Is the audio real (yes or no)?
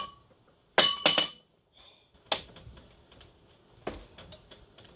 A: yes